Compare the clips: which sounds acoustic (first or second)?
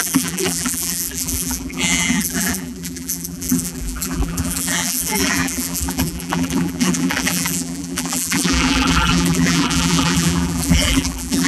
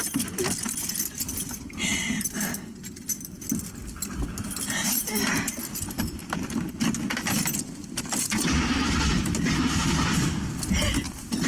second